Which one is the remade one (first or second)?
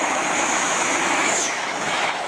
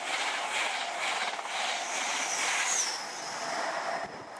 first